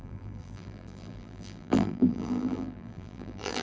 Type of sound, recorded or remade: remade